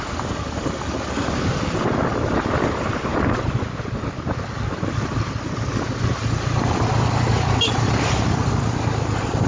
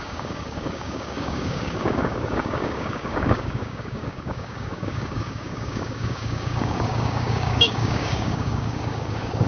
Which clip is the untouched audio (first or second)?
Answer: first